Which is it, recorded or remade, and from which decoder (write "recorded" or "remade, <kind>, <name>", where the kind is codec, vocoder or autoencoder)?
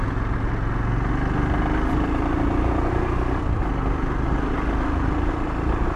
recorded